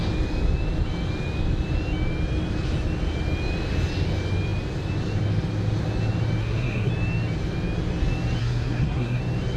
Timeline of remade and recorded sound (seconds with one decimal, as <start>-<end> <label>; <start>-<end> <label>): 0.0-6.4 recorded; 6.4-6.9 remade; 6.9-8.4 recorded; 8.4-9.2 remade; 9.2-9.6 recorded